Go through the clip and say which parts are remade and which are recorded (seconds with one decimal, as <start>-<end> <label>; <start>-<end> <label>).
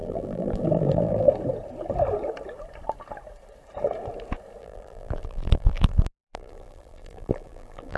0.0-1.3 remade; 1.3-4.6 recorded; 4.6-8.0 remade